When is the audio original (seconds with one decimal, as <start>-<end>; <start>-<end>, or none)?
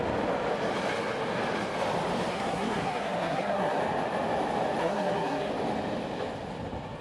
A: 0.0-2.3; 3.8-4.8; 5.5-7.0